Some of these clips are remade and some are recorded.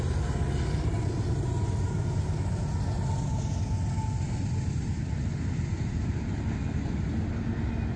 recorded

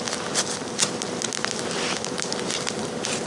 remade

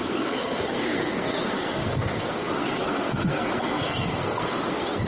remade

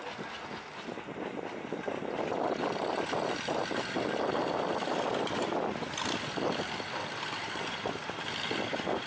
recorded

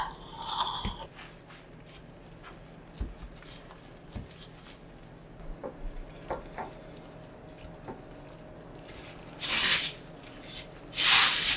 recorded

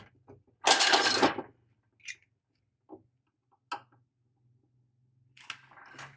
recorded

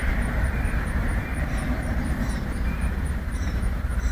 remade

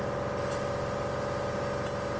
recorded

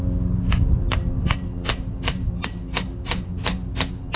recorded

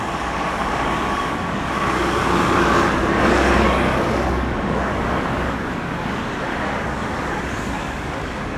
remade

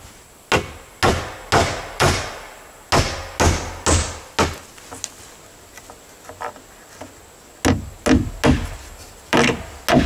recorded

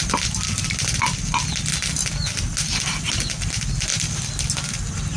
recorded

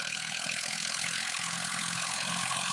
remade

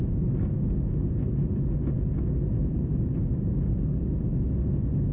recorded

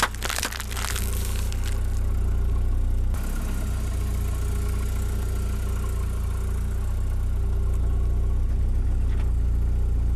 recorded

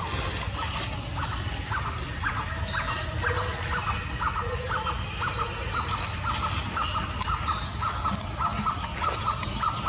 recorded